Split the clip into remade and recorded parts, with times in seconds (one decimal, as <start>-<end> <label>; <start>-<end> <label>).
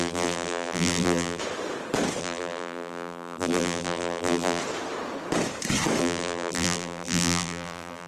0.0-1.4 remade; 1.4-2.2 recorded; 2.2-4.6 remade; 4.6-6.0 recorded; 6.0-8.1 remade